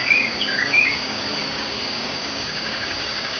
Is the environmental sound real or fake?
fake